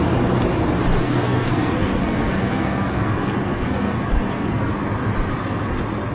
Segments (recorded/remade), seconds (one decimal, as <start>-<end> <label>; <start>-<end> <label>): 0.0-1.0 recorded; 1.0-4.7 remade; 4.7-6.1 recorded